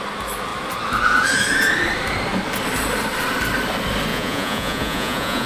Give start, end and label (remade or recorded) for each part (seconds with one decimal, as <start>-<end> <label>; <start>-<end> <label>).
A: 0.0-4.1 recorded; 4.1-5.5 remade